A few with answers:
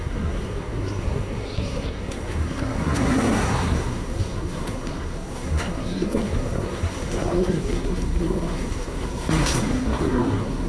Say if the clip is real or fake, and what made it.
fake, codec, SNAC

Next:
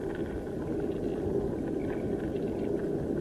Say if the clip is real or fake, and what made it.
real